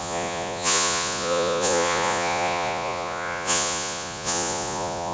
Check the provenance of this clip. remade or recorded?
remade